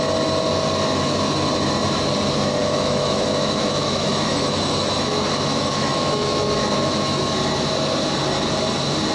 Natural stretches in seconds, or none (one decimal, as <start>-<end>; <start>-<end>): 0.0-2.6; 7.2-9.1